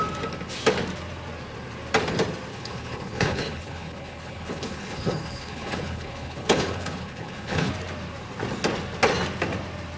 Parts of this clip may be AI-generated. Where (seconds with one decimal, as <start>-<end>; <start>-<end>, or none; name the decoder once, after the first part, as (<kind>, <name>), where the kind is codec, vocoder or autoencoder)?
2.5-7.7 (codec, HILCodec)